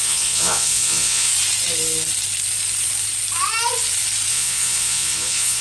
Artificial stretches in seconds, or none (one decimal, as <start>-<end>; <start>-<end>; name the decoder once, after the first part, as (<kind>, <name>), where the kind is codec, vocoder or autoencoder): 0.0-1.3 (vocoder, Vocos); 4.3-5.6